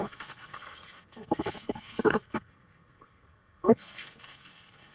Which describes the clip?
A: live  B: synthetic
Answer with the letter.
B